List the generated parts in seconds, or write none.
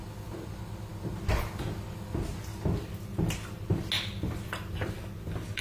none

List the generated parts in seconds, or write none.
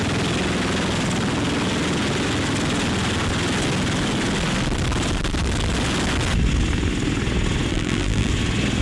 7.7-8.3 (vocoder, BigVGAN v2)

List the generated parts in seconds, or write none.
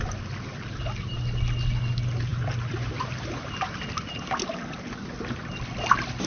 2.3-6.3 (vocoder, BigVGAN v2)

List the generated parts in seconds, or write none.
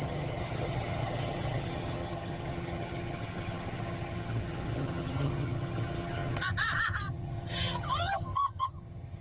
0.0-9.2 (vocoder, HiFi-GAN)